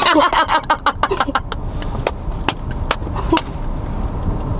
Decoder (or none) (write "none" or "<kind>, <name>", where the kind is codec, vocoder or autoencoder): none